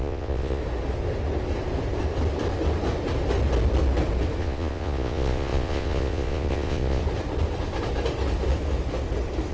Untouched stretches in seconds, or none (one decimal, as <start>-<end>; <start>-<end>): 0.6-4.4; 7.0-9.5